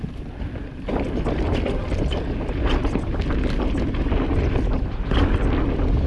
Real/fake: real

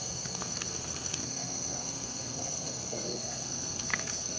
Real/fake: fake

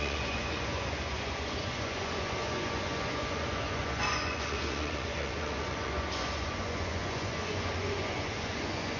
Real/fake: fake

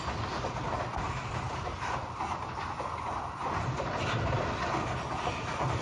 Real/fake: real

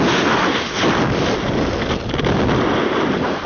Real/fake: real